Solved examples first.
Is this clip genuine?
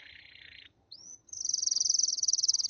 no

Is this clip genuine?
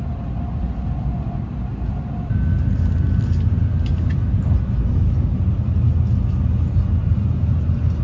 yes